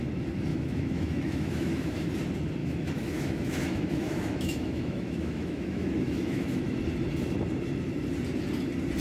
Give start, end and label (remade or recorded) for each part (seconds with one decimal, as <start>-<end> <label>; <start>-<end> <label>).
0.0-0.5 recorded; 0.5-2.1 remade; 2.1-2.6 recorded; 2.6-6.8 remade; 6.8-9.0 recorded

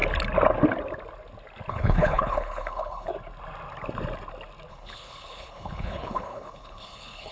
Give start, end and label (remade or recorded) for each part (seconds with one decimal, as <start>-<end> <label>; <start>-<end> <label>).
0.0-1.7 recorded; 1.7-3.1 remade; 3.1-4.7 recorded; 4.7-7.3 remade

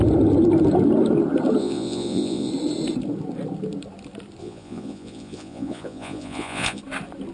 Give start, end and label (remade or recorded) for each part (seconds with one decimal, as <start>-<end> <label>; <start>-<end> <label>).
0.0-1.6 recorded; 1.6-2.5 remade; 2.5-4.4 recorded; 4.4-6.8 remade; 6.8-7.3 recorded

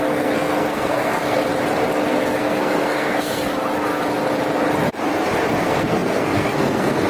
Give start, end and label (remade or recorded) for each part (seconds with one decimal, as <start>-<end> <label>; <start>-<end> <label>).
0.0-1.5 remade; 1.5-2.1 recorded; 2.1-3.5 remade; 3.5-5.6 recorded; 5.6-7.1 remade